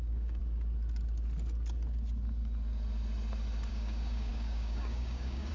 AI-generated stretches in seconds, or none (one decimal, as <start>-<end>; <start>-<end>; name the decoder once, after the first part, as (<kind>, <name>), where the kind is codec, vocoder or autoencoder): 0.0-0.4 (codec, DAC); 3.7-5.5